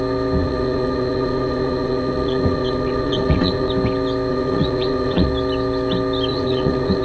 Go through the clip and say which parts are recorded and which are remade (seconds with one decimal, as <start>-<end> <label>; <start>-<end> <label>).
0.0-0.4 recorded; 0.4-3.7 remade; 3.7-4.3 recorded; 4.3-5.3 remade; 5.3-6.3 recorded; 6.3-7.0 remade